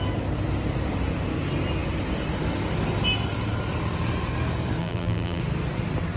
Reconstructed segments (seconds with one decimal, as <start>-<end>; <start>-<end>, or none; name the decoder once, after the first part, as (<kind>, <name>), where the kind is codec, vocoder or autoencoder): 4.8-5.4 (vocoder, BigVGAN v2)